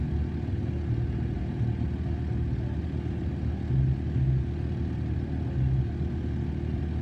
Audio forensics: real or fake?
real